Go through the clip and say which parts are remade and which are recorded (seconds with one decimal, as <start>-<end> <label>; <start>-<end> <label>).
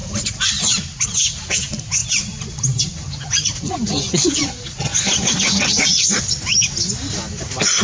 0.0-7.8 recorded